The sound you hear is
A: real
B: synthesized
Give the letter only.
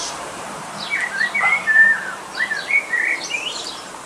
B